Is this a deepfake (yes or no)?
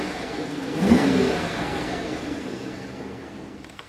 yes